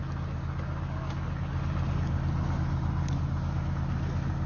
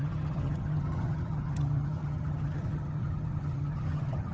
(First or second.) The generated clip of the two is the second